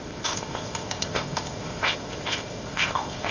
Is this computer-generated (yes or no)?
yes